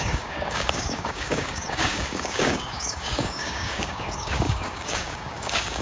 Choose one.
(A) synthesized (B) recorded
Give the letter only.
A